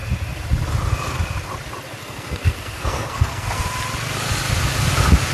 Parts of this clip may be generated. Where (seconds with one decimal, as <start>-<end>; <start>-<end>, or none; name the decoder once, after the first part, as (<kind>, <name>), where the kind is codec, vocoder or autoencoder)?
2.0-3.6 (codec, SNAC)